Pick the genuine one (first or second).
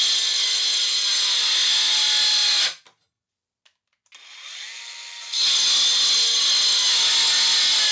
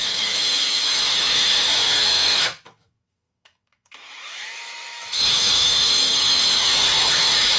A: first